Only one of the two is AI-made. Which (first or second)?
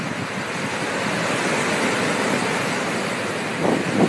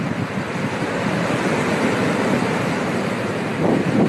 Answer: second